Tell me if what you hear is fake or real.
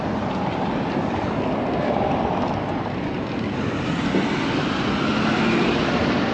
real